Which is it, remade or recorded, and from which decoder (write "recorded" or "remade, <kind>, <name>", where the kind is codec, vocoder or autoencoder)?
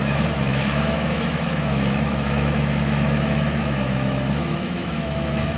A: remade, autoencoder, DAC-VAE